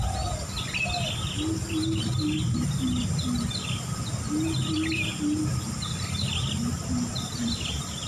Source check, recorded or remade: recorded